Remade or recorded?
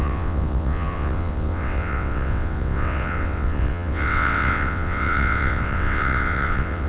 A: remade